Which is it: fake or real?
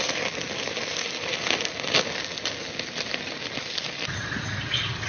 real